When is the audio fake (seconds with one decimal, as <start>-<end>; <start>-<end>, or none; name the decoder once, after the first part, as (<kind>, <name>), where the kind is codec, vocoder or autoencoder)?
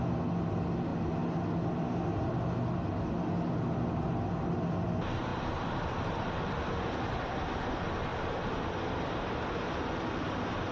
none